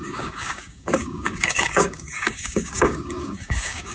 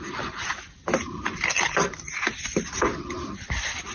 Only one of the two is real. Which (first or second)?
second